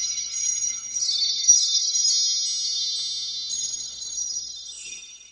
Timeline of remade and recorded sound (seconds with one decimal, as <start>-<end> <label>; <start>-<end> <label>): 0.0-2.1 remade; 2.1-3.5 recorded; 3.5-5.3 remade